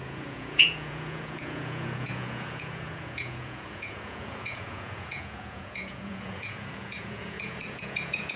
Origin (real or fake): fake